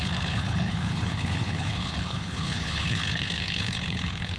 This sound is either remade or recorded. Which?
remade